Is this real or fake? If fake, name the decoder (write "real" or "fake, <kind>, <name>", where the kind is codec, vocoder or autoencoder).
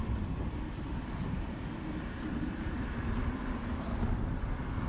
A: real